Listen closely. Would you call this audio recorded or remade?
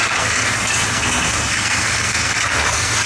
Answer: remade